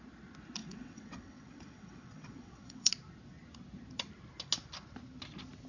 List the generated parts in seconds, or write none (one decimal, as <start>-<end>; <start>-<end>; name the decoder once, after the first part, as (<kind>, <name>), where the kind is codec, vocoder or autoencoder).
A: 0.6-2.9 (vocoder, WaveNeXt)

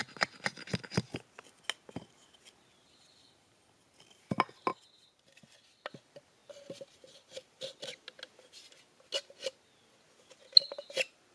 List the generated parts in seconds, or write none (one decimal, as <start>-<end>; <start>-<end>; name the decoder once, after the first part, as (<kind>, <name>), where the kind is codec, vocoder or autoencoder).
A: none

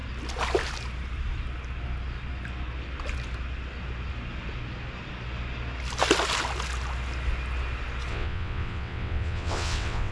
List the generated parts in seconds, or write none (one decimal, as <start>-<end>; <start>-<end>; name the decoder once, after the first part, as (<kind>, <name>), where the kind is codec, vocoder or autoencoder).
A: 8.1-10.1 (vocoder, WaveNeXt)

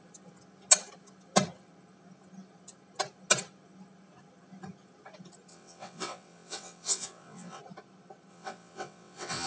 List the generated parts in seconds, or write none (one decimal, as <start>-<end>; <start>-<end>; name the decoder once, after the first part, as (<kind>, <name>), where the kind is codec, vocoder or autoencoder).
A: 5.5-7.6 (vocoder, WaveNeXt); 8.3-9.5

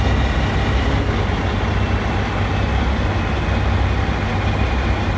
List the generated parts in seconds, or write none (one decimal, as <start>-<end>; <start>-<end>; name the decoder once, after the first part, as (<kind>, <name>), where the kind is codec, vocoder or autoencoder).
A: none

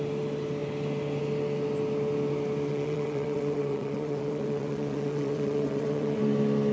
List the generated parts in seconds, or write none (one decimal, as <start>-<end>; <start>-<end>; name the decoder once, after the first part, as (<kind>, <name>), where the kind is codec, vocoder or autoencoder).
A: 2.7-6.2 (vocoder, WaveNeXt)

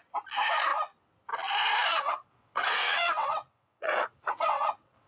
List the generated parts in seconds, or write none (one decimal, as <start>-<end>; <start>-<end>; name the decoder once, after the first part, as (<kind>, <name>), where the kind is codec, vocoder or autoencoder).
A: 1.9-5.1 (vocoder, WaveNeXt)